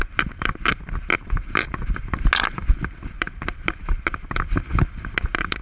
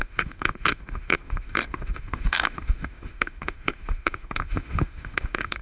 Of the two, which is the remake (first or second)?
second